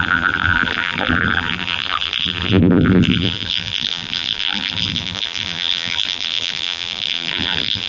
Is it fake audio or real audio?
fake